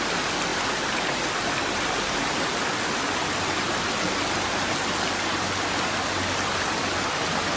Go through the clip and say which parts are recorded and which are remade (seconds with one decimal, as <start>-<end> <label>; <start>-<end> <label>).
0.0-7.6 recorded